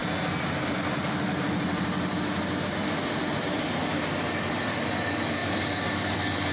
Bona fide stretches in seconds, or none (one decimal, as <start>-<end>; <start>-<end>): 0.0-6.5